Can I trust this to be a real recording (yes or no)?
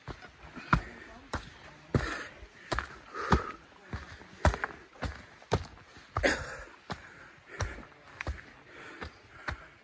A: yes